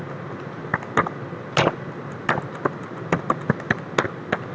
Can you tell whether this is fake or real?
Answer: real